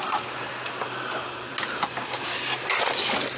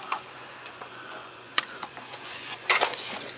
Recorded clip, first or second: first